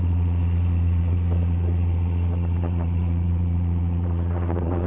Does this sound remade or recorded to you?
remade